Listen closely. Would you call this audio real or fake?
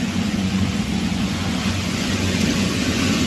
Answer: fake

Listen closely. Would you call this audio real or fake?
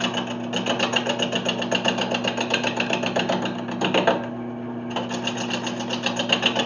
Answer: real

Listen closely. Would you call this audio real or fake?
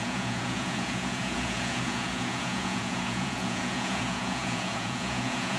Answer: fake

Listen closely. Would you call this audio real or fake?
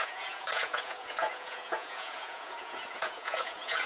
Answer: fake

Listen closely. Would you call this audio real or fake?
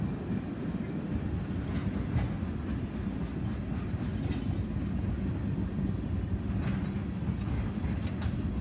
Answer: real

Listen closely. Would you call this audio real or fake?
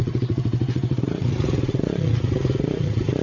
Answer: fake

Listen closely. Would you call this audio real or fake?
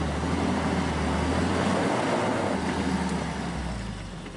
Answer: real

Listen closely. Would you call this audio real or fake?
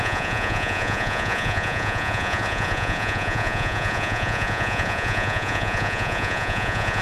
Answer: fake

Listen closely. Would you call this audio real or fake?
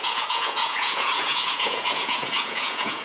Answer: fake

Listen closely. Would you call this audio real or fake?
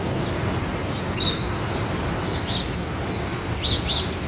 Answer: real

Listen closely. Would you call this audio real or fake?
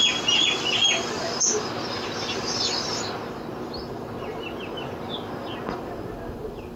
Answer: real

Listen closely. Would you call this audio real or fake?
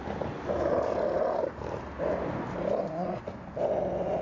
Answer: real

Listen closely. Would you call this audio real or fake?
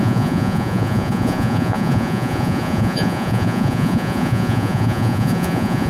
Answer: fake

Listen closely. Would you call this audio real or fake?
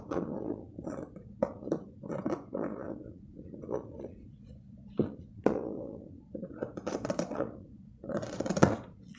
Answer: fake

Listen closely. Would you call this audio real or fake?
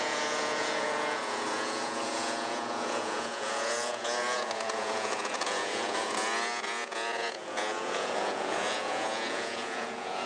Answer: fake